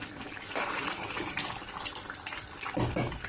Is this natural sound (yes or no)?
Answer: yes